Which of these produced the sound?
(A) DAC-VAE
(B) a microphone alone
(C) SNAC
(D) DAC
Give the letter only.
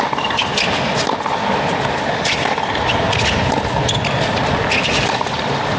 B